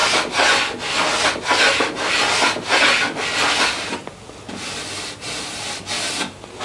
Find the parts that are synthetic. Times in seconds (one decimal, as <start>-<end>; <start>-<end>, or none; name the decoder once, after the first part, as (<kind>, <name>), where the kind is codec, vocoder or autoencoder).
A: none